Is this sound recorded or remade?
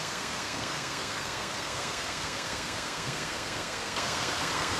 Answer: remade